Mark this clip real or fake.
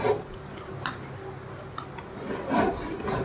real